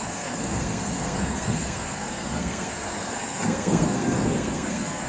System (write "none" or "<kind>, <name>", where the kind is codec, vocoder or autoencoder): codec, SNAC